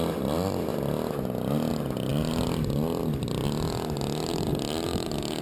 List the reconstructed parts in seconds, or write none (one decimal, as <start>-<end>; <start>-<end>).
none